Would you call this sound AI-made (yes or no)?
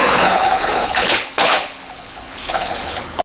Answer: yes